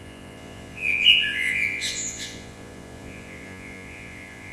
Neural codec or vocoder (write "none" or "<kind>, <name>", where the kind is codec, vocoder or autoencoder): vocoder, Vocos